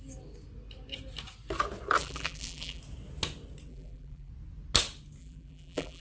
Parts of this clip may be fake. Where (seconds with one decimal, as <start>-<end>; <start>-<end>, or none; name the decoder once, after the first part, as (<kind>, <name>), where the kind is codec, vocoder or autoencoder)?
2.0-2.8 (vocoder, BigVGAN v2); 3.7-4.3; 5.2-6.0